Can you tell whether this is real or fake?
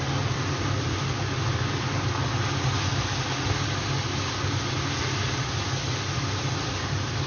real